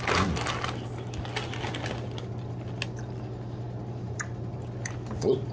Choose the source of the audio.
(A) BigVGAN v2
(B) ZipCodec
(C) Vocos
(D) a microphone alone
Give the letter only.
D